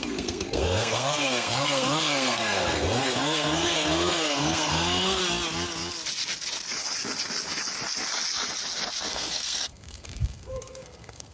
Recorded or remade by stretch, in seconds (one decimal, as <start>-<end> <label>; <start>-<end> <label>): 0.0-5.2 remade; 5.2-9.1 recorded; 9.1-11.3 remade